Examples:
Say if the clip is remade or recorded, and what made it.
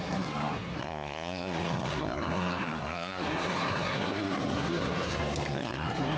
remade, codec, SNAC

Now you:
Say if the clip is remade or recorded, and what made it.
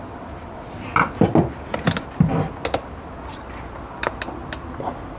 recorded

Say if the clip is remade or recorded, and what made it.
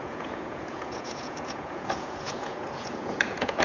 remade, vocoder, Vocos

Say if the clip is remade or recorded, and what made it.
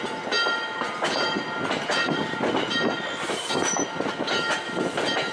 recorded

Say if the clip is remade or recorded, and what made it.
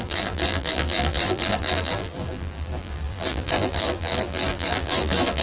remade, vocoder, BigVGAN v2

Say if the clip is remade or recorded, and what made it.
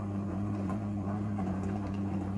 remade, vocoder, Vocos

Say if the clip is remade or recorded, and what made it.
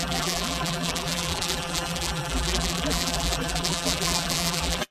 remade, vocoder, BigVGAN v2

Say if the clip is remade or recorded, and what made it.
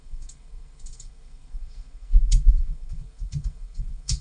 remade, codec, SNAC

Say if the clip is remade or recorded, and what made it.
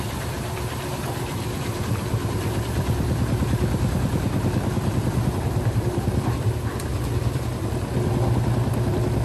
remade, vocoder, BigVGAN v2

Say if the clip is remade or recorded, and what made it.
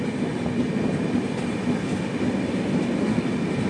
recorded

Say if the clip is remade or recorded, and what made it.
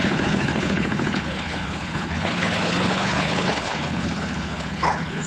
remade, codec, HILCodec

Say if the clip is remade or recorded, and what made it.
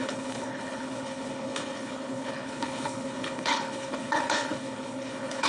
remade, codec, HILCodec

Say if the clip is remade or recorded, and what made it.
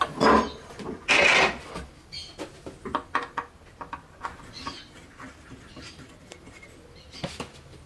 recorded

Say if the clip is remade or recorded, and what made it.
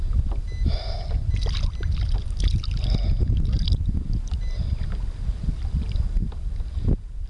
recorded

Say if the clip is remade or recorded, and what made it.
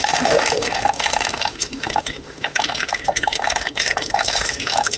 remade, autoencoder, DAC-VAE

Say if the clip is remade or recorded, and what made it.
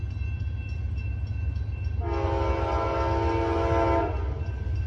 recorded